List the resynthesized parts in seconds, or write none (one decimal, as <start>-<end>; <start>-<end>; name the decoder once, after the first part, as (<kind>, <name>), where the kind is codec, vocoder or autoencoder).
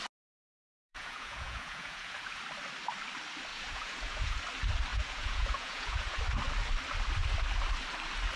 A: 0.6-2.4 (vocoder, Vocos); 3.5-4.4; 4.9-6.2